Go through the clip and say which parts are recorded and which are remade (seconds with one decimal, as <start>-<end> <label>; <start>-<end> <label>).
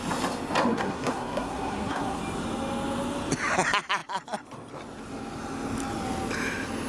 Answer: 0.0-0.7 recorded; 0.7-2.2 remade; 2.2-6.9 recorded